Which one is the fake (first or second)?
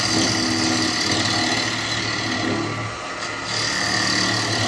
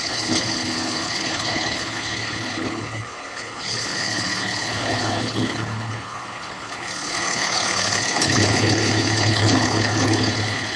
second